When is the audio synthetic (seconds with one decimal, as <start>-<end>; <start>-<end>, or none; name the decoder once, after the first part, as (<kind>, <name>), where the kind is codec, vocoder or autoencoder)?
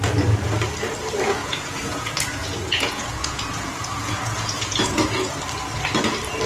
1.4-5.3 (vocoder, Vocos)